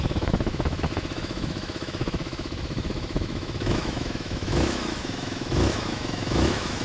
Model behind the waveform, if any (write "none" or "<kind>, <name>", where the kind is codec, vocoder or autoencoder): autoencoder, DAC-VAE